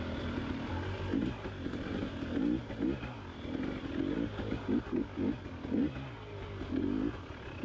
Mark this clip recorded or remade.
recorded